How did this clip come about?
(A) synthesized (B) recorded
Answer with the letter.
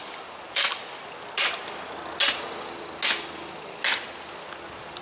B